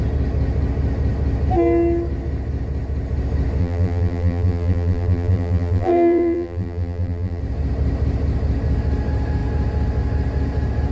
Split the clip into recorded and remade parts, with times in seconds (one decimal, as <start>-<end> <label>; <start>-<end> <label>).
0.0-3.6 recorded; 3.6-7.4 remade; 7.4-10.9 recorded